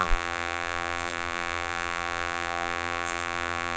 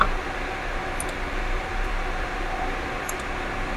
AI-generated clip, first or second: first